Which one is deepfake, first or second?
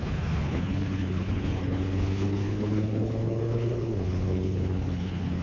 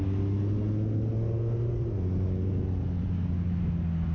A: first